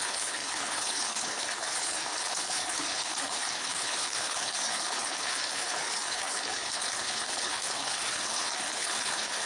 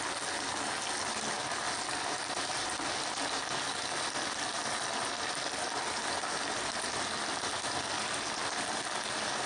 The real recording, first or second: second